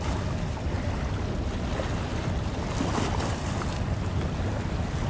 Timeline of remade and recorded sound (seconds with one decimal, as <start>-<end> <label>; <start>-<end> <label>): 0.0-5.1 recorded